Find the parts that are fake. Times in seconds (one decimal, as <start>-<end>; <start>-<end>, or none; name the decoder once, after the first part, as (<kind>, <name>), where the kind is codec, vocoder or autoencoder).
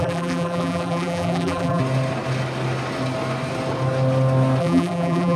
0.0-1.8 (vocoder, BigVGAN v2); 4.6-5.4